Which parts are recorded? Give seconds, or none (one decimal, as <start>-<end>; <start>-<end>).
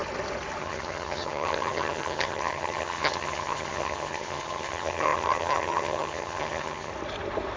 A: 0.0-0.6; 6.9-7.6